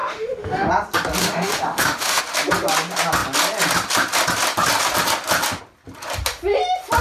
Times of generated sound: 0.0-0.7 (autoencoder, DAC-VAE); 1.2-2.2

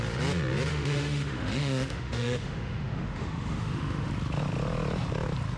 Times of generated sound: 0.7-4.1 (autoencoder, DAC-VAE)

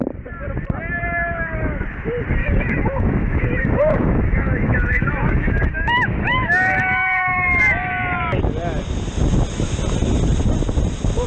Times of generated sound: 2.4-7.6 (autoencoder, DAC-VAE)

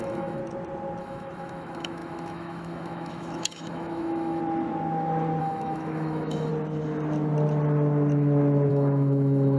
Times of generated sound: 0.0-0.4 (autoencoder, DAC-VAE); 1.0-4.4; 5.4-6.5; 8.7-9.6

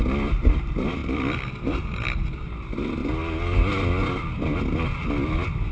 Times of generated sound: none

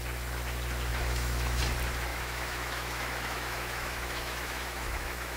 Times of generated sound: 0.9-1.6 (autoencoder, DAC-VAE); 2.1-5.4